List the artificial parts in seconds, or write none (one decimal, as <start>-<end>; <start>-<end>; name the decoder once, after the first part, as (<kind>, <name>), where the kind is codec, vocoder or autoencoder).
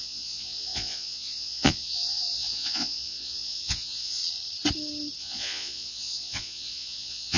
0.0-4.2 (vocoder, Vocos); 5.2-7.4